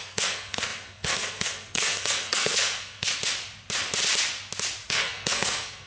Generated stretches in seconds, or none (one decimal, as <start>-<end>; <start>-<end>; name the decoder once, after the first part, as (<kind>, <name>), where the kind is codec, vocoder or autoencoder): 0.0-3.1 (codec, SNAC); 4.9-5.9